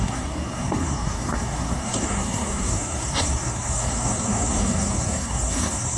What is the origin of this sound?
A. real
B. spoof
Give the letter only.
B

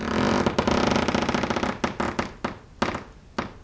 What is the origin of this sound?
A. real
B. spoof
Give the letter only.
A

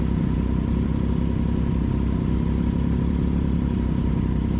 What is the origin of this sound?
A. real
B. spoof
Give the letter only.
A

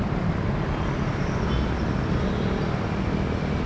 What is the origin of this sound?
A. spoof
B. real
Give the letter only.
B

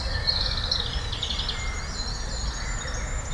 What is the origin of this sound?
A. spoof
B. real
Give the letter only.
B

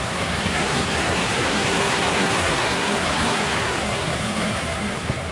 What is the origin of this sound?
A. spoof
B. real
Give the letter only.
A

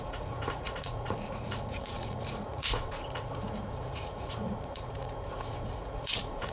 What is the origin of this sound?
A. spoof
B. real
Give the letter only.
A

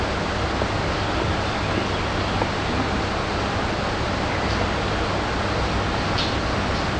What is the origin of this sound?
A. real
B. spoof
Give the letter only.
A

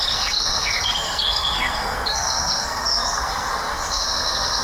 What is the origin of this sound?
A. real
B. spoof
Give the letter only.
B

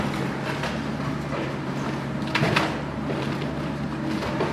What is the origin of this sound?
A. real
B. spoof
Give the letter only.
A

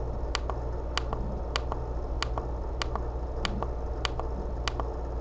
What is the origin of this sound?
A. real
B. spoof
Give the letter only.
A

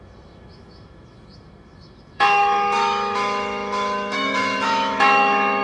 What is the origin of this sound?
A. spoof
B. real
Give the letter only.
A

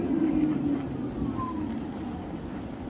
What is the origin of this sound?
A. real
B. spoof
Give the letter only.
A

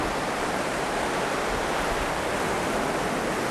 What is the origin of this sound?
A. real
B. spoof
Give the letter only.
A